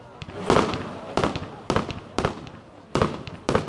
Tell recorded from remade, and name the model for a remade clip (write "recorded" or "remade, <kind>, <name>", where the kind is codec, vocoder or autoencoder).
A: recorded